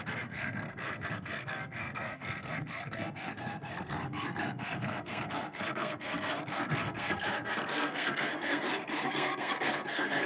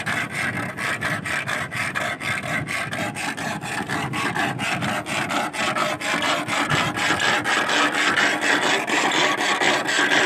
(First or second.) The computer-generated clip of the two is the first